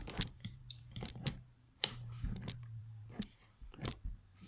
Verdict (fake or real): fake